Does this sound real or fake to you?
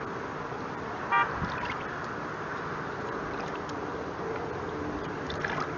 real